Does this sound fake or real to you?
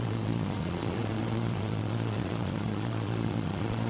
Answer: fake